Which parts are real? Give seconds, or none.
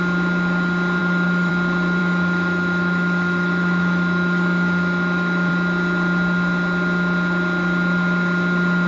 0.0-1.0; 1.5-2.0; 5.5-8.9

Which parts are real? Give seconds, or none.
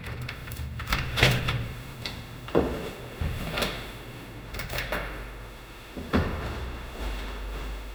none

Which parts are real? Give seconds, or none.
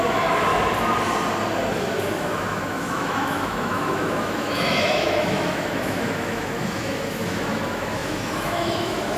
0.5-1.8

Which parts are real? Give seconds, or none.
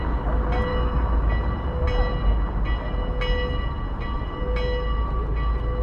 0.0-0.7; 1.3-5.8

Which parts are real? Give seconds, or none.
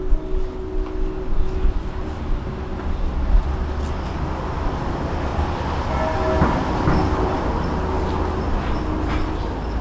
0.0-9.8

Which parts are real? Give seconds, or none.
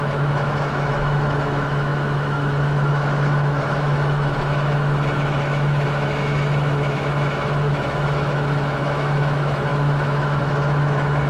none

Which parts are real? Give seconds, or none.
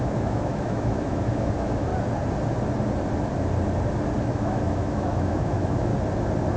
1.9-4.2; 5.9-6.6